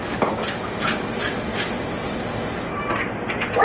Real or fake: real